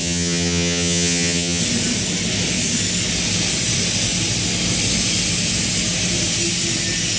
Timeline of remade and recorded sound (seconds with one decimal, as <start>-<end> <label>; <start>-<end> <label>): 0.0-1.6 remade; 1.6-7.2 recorded